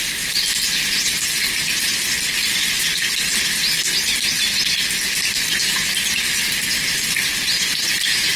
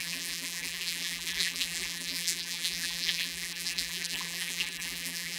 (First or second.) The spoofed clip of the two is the second